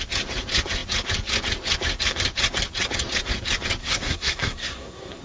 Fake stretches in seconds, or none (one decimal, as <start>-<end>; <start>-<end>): 3.8-5.2